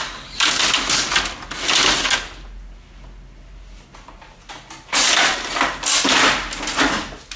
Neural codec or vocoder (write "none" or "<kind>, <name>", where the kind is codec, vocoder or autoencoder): none